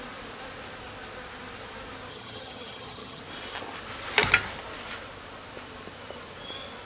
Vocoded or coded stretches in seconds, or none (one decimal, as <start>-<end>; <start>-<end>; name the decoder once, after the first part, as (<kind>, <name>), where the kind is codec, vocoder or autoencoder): 2.1-3.2 (vocoder, HiFi-GAN)